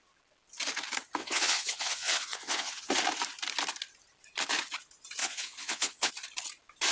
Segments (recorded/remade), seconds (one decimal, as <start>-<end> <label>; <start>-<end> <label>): 0.0-1.2 recorded; 1.2-2.9 remade; 2.9-5.2 recorded; 5.2-6.1 remade; 6.1-6.9 recorded

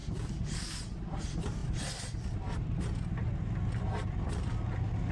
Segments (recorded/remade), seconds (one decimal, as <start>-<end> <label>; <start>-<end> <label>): 0.0-0.8 remade; 0.8-5.1 recorded

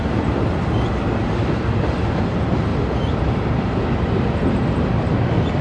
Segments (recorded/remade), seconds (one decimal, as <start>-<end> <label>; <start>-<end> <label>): 0.0-5.6 recorded

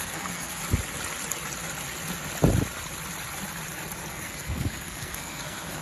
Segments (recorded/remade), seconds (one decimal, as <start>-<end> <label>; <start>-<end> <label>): 0.0-0.6 remade; 0.6-4.1 recorded; 4.1-5.8 remade

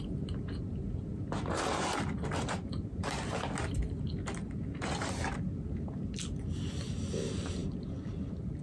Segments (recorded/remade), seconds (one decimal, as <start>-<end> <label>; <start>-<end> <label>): 0.0-8.6 recorded

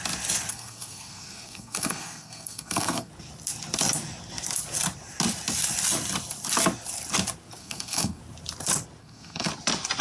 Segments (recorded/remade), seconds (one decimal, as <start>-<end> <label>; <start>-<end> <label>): 0.0-0.5 recorded; 0.5-3.1 remade; 3.1-7.6 recorded; 7.6-8.2 remade; 8.2-9.0 recorded; 9.0-9.5 remade; 9.5-10.0 recorded